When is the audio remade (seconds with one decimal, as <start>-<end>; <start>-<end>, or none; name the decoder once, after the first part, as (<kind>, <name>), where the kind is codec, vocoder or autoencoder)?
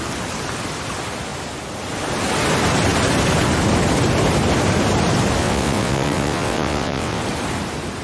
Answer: 5.4-7.2 (vocoder, WaveNeXt)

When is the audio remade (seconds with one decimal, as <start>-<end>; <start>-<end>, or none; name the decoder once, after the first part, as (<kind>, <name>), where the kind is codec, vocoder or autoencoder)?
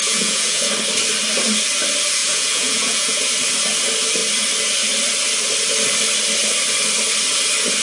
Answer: 0.0-0.7 (vocoder, Vocos); 2.2-3.2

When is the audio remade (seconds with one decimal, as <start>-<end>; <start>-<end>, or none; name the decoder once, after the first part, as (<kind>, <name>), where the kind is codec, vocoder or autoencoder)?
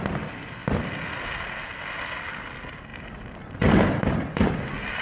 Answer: none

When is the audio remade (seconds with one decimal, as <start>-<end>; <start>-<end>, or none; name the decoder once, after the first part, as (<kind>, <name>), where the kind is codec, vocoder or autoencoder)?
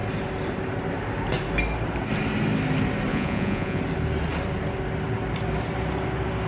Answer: 3.1-3.8 (vocoder, Vocos)